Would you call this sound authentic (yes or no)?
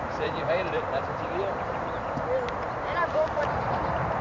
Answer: no